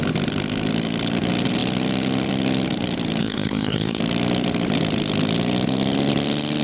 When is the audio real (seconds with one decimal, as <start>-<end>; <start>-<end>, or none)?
0.0-3.2; 4.0-6.6